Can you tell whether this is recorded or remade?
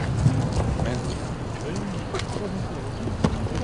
recorded